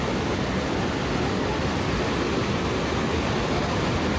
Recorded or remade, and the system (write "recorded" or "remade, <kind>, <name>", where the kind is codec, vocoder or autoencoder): recorded